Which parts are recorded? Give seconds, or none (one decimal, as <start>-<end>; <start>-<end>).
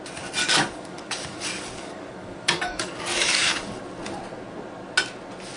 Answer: 0.0-0.4; 3.8-5.6